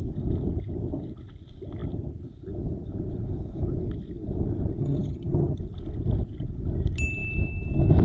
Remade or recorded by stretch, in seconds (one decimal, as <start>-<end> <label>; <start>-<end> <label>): 0.0-4.8 recorded; 4.8-5.6 remade; 5.6-8.0 recorded